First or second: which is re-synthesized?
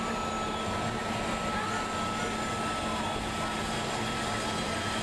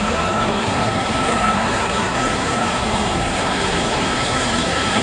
second